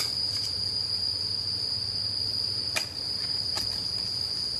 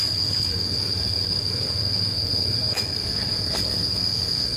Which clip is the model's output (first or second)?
second